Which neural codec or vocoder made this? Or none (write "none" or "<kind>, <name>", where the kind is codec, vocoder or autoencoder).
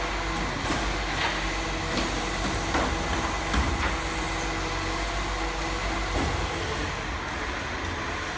none